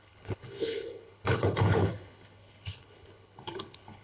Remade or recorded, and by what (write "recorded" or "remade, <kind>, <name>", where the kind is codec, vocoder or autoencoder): remade, codec, HILCodec